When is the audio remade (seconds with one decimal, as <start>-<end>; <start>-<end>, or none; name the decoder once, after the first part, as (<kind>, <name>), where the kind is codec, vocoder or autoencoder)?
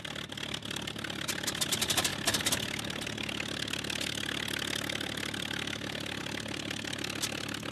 none